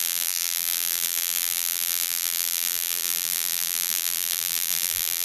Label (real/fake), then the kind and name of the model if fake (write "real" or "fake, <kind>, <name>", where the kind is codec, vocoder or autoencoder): fake, vocoder, BigVGAN v2